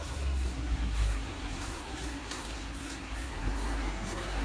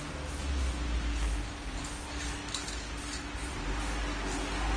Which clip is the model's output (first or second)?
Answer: first